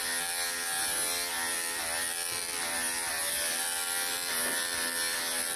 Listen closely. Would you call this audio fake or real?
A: fake